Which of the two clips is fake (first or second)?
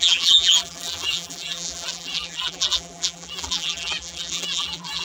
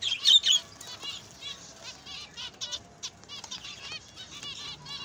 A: first